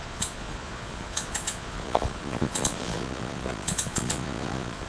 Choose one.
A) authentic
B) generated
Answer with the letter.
B